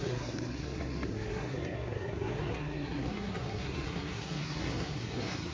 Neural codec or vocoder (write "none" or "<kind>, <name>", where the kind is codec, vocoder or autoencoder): codec, SNAC